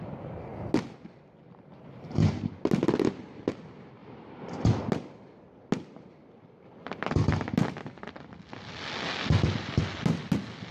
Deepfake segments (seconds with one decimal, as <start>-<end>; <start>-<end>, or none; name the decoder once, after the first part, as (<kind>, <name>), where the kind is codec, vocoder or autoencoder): 4.0-4.8 (vocoder, BigVGAN v2)